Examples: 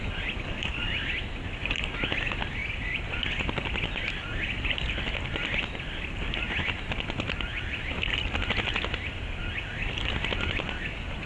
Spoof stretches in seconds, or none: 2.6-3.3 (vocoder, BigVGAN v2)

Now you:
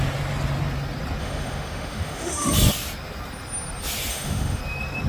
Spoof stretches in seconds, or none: 1.2-2.5 (autoencoder, DAC-VAE); 4.1-4.6

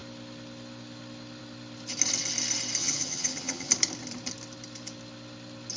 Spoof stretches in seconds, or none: 2.8-3.7 (vocoder, HiFi-GAN)

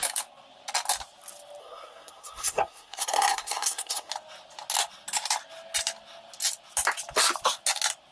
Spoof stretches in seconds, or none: 1.6-4.1 (codec, SNAC)